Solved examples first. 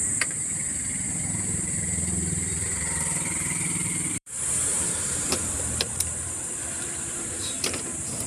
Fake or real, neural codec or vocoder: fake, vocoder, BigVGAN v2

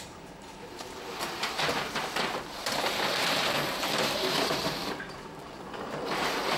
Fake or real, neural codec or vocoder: fake, vocoder, BigVGAN v2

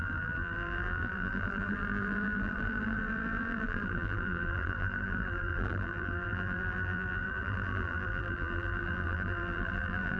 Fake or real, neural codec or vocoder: fake, vocoder, BigVGAN v2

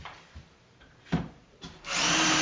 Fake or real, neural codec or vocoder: fake, vocoder, BigVGAN v2